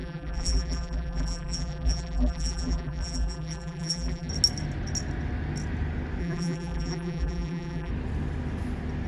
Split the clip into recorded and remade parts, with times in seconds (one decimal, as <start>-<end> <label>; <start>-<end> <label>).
0.0-4.3 remade; 4.3-6.2 recorded; 6.2-7.9 remade; 7.9-9.1 recorded